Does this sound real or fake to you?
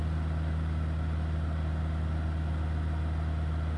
real